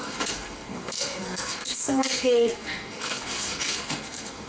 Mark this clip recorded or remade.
remade